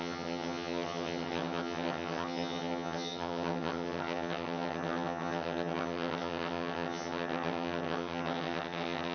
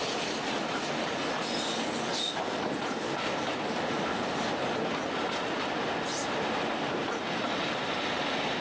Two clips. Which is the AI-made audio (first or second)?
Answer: first